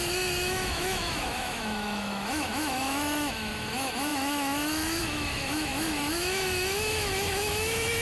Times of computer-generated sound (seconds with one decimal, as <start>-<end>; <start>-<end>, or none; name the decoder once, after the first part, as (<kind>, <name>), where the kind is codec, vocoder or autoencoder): 0.0-8.0 (autoencoder, DAC-VAE)